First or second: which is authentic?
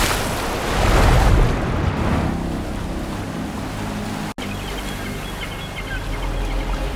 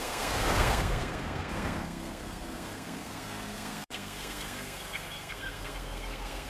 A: first